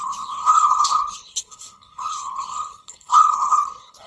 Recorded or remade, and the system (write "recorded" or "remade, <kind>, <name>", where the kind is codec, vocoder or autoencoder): remade, codec, HILCodec